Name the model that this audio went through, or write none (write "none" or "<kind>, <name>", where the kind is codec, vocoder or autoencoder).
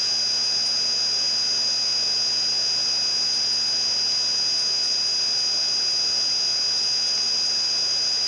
none